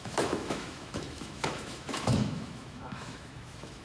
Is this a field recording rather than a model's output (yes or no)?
no